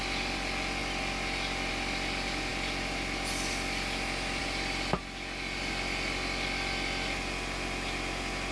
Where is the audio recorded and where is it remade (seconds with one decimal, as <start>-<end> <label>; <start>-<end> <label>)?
0.0-8.5 recorded